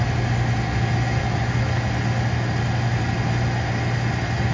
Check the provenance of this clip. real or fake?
real